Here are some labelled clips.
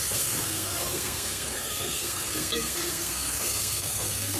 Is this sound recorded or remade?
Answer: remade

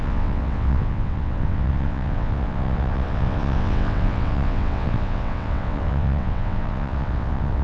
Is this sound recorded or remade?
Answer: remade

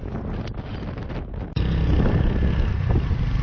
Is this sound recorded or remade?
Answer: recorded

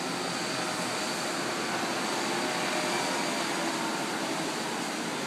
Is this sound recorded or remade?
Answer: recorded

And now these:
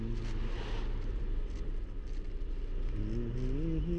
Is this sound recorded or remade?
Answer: recorded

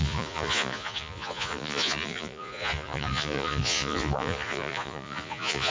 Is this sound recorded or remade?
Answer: remade